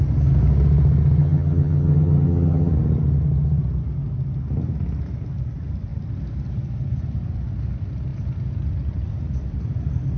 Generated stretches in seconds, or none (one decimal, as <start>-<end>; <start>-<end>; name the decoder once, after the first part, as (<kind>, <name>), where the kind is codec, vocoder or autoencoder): 1.2-2.7 (vocoder, HiFi-GAN)